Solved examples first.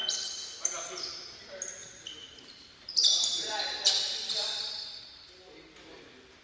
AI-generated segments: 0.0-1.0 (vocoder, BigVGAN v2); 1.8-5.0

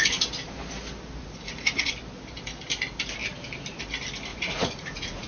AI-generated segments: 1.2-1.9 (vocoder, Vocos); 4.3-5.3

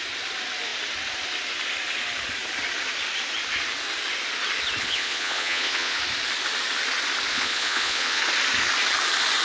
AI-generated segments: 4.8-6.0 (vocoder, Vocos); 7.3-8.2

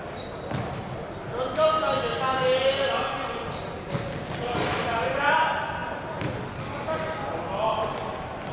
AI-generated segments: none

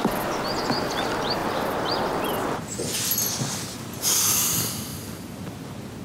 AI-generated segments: none

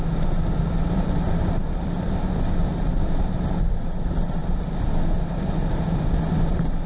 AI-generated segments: none

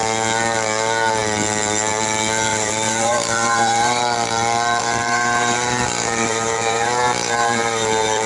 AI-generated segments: 2.5-4.0 (vocoder, BigVGAN v2); 4.8-8.3